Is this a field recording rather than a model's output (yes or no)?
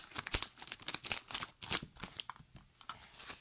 yes